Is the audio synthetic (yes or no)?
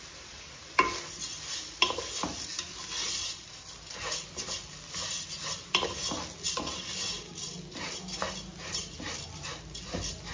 no